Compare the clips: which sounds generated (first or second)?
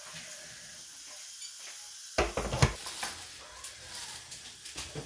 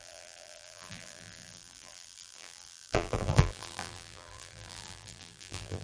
second